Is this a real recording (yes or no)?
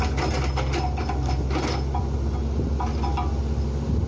yes